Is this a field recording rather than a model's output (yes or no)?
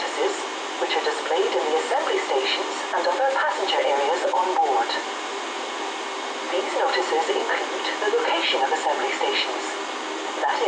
yes